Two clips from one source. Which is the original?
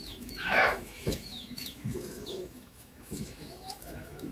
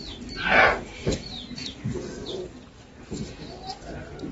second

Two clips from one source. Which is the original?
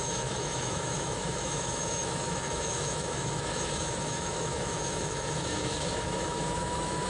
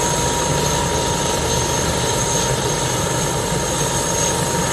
second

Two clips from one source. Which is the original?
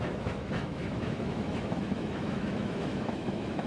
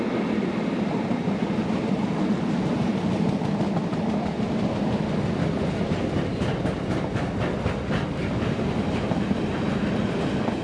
second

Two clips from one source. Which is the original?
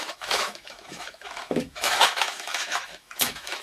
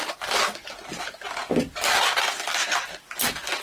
second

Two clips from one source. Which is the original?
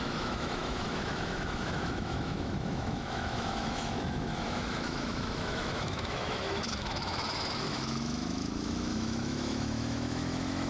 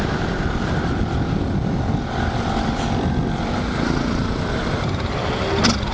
second